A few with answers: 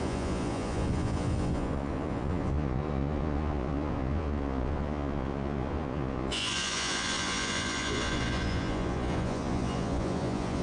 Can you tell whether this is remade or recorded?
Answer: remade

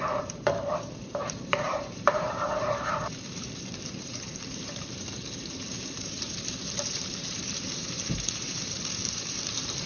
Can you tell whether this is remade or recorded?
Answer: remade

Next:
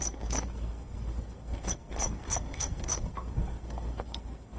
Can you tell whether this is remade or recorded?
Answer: remade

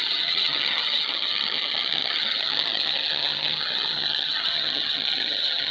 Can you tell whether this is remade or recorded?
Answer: remade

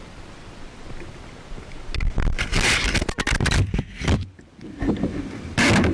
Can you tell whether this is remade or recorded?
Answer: recorded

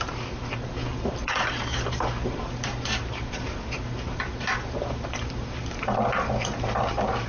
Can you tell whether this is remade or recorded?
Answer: remade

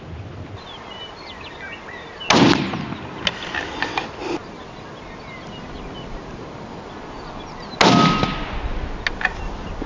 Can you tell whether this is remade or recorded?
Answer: recorded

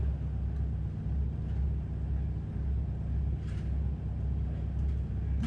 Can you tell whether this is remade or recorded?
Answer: recorded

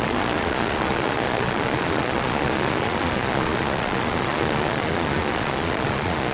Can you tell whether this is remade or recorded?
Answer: remade